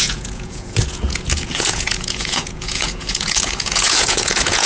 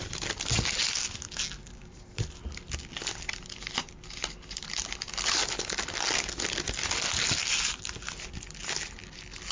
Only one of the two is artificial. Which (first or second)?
first